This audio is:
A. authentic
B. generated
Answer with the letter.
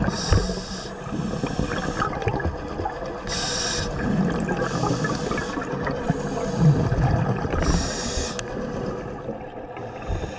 A